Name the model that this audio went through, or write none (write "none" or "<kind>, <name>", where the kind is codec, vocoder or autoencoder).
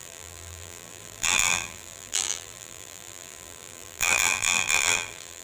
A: vocoder, BigVGAN v2